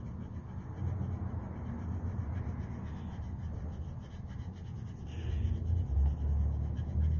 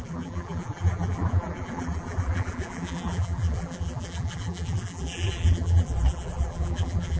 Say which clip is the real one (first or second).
first